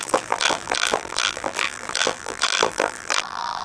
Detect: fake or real fake